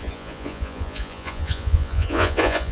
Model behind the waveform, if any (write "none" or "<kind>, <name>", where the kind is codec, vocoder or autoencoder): vocoder, Vocos